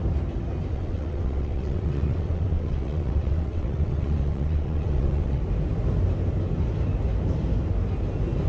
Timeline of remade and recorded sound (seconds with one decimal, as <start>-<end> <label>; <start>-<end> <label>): 0.0-0.7 recorded; 0.7-5.4 remade; 5.4-8.5 recorded